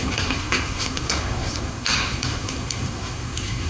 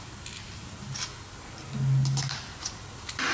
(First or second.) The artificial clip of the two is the first